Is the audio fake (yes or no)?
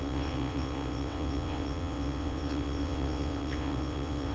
yes